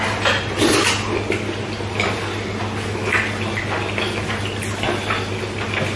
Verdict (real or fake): real